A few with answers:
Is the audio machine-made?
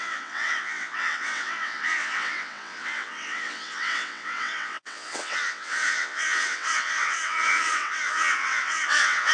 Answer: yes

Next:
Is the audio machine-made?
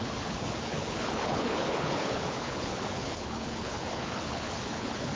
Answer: yes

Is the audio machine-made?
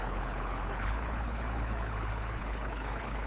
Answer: yes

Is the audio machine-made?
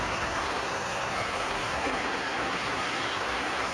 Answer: yes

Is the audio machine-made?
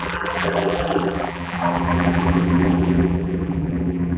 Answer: yes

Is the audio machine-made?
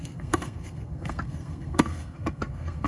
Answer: yes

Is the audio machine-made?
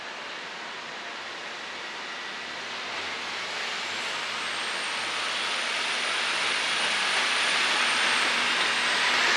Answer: no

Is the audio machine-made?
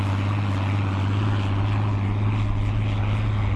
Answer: no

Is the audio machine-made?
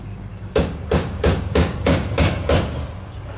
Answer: yes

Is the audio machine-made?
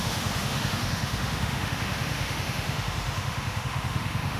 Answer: yes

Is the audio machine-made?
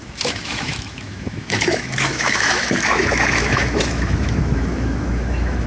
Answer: yes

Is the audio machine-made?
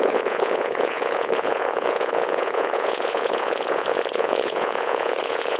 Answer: yes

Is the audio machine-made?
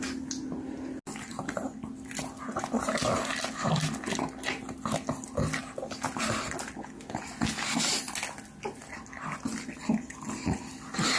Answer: no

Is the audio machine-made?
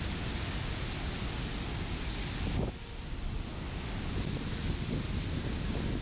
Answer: no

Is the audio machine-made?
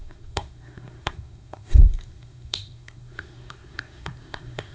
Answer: yes